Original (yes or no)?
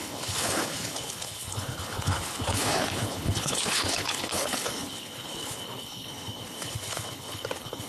no